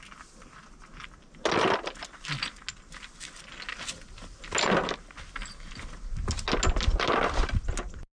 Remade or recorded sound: recorded